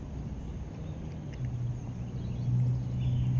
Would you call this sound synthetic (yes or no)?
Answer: no